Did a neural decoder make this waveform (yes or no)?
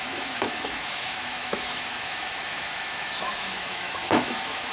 yes